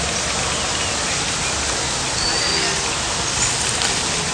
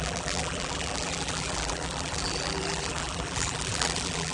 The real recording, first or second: first